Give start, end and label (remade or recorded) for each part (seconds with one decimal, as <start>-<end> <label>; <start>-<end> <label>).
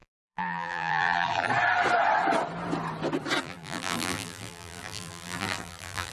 0.0-1.5 remade; 1.5-3.4 recorded; 3.4-6.1 remade